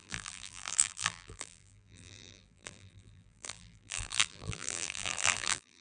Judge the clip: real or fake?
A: fake